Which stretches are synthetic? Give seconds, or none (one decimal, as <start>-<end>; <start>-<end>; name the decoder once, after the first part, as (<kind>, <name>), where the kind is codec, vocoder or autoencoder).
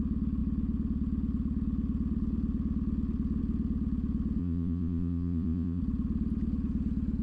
4.4-5.8 (vocoder, Vocos)